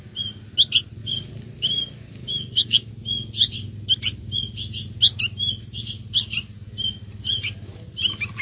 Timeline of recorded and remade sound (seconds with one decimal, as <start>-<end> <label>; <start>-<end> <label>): 0.0-1.0 recorded; 1.0-2.9 remade; 2.9-8.4 recorded